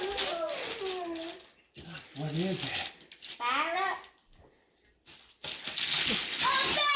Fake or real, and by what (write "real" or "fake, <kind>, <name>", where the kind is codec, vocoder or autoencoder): real